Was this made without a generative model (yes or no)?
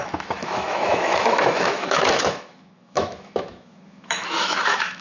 no